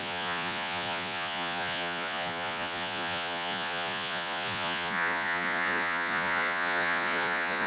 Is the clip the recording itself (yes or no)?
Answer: no